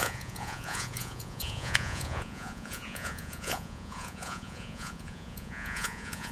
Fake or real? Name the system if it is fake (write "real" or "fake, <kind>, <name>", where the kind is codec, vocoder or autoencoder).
fake, vocoder, Vocos